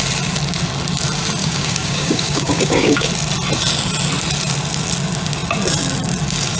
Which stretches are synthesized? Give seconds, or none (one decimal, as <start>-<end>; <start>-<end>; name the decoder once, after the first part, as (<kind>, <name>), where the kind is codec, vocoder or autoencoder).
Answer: 1.4-3.1 (codec, DAC)